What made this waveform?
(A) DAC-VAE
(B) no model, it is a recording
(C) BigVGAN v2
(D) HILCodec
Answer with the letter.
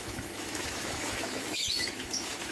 A